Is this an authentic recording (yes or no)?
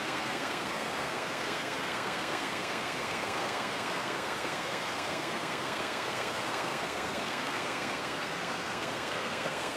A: no